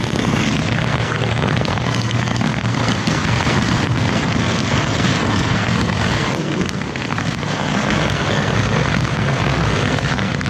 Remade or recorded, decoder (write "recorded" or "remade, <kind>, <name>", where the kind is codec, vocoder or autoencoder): remade, codec, SNAC